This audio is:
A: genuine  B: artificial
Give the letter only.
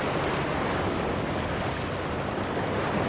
B